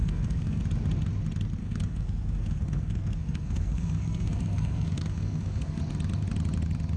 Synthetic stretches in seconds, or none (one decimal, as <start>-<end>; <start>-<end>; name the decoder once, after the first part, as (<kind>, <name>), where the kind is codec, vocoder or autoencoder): 0.0-0.6 (codec, SNAC); 1.6-5.8